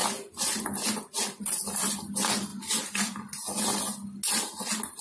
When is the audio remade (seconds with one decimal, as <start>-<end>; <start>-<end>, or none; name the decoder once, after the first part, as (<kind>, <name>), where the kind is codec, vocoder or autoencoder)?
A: none